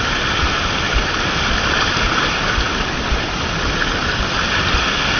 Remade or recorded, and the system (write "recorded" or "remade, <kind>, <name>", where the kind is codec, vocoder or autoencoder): recorded